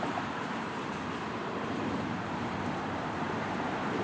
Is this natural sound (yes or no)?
no